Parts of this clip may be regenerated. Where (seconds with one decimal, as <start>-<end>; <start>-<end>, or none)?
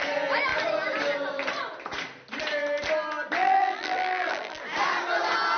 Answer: 3.4-4.6